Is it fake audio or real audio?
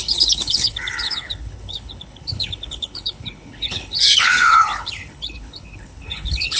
fake